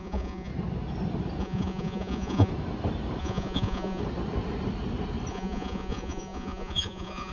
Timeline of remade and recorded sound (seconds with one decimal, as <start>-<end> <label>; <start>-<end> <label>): 0.0-0.5 remade; 0.5-1.4 recorded; 1.4-2.5 remade; 2.5-3.2 recorded; 3.2-4.0 remade; 4.0-5.3 recorded; 5.3-7.3 remade